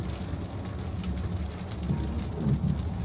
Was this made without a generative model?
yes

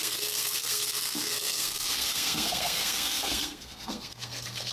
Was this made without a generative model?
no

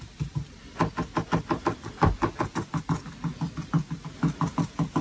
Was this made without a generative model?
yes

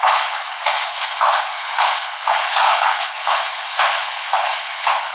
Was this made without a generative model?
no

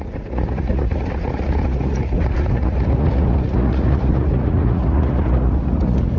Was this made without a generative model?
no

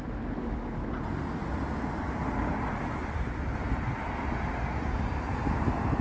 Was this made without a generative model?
yes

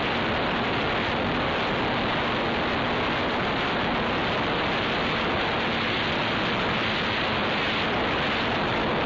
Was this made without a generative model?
yes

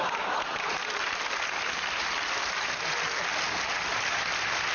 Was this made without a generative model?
yes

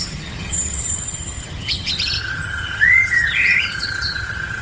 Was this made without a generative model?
no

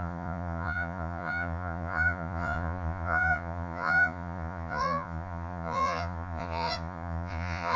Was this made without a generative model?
no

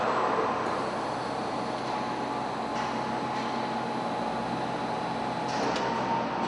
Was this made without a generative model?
yes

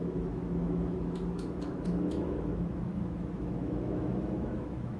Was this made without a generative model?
no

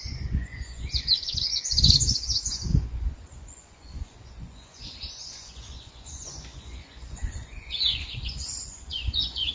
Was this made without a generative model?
no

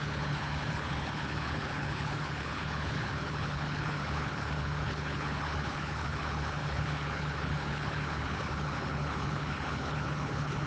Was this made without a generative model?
no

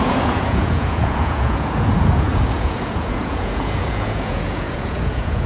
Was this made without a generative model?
no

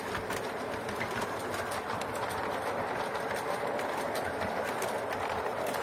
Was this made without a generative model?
yes